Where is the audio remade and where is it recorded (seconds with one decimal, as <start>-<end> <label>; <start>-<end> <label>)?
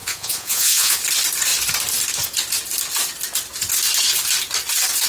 0.0-1.0 remade; 1.0-5.1 recorded